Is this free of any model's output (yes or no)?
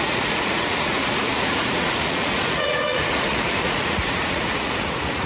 no